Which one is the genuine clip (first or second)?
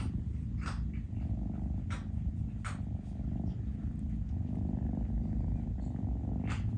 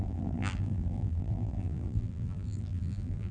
first